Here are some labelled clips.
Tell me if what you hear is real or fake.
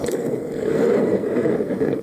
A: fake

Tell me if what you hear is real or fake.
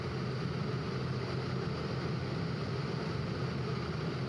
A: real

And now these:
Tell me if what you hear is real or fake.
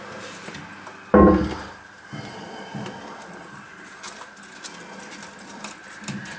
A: real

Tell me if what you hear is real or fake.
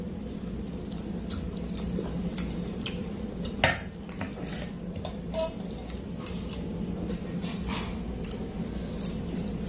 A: real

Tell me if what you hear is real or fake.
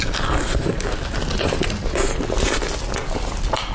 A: real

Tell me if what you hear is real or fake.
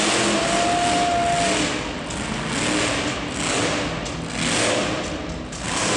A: real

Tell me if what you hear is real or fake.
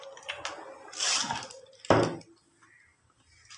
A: real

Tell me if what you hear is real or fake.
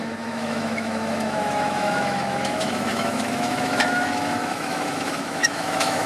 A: fake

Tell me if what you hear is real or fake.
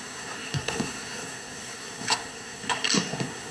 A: fake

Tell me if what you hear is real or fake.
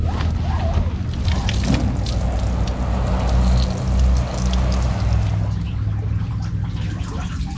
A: real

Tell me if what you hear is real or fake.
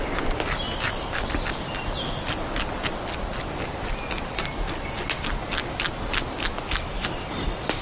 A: real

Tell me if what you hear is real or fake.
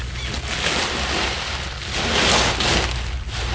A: real